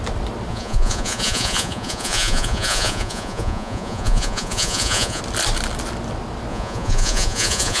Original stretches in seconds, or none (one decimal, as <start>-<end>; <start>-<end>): 0.0-0.5; 5.2-6.5